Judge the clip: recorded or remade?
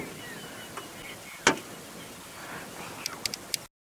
recorded